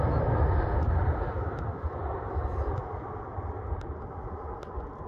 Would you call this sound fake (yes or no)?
yes